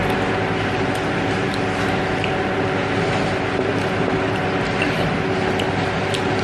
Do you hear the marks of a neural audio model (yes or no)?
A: no